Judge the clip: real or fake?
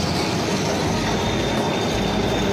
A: real